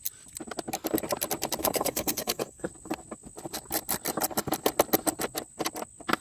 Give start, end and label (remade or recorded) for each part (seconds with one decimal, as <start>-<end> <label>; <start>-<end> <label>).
0.0-1.6 recorded; 1.6-2.7 remade; 2.7-6.2 recorded